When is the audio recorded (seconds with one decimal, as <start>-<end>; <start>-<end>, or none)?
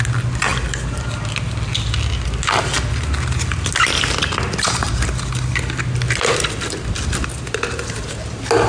0.0-8.7